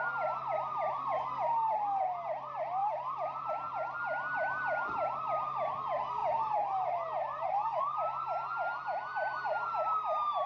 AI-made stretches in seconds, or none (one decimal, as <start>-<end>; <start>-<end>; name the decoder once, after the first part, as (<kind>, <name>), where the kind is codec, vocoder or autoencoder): none